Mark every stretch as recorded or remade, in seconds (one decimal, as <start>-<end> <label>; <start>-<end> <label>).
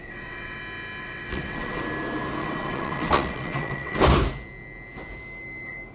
0.0-0.6 remade; 0.6-1.0 recorded; 1.0-1.8 remade; 1.8-2.4 recorded; 2.4-4.0 remade; 4.0-5.9 recorded